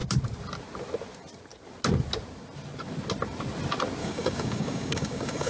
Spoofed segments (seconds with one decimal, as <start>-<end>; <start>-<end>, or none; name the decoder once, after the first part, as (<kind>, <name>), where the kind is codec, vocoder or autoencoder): 4.0-5.5 (codec, DAC)